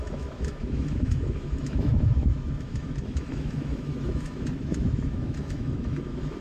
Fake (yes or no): yes